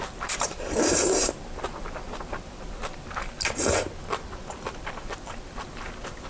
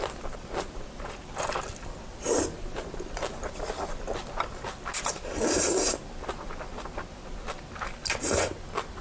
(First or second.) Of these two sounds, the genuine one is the second